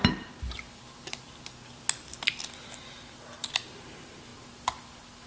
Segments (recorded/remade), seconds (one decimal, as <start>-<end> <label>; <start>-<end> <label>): 0.0-5.3 recorded